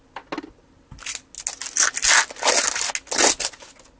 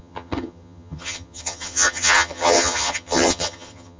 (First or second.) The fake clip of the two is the second